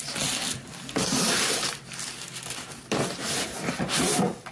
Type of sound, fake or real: real